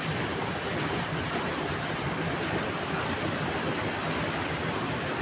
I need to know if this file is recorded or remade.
recorded